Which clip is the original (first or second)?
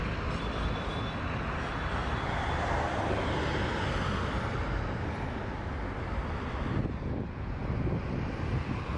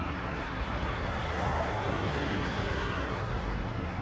first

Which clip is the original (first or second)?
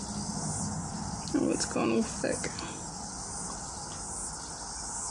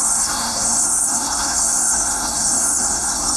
first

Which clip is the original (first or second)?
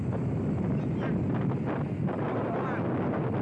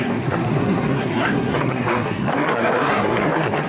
first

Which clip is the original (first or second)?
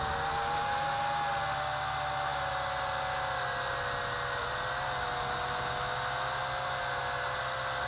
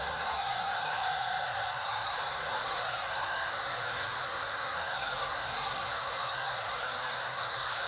first